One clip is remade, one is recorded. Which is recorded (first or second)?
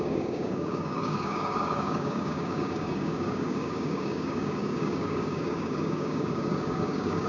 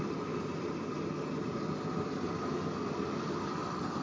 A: second